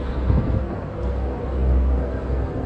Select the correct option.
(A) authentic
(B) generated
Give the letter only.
B